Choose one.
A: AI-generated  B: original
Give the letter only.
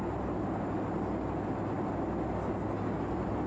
B